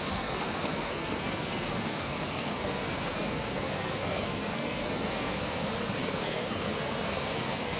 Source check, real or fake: fake